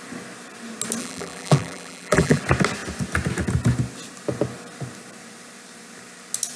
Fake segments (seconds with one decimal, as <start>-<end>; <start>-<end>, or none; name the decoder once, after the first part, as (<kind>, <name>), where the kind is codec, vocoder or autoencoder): 1.0-2.4 (vocoder, BigVGAN v2)